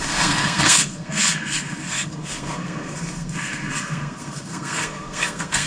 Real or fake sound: fake